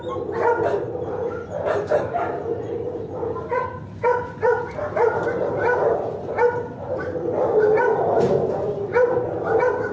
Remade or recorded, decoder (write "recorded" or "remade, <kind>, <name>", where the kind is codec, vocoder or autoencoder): remade, vocoder, BigVGAN v2